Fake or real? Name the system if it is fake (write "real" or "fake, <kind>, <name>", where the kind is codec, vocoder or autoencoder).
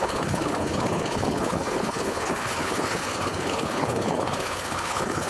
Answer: fake, codec, HILCodec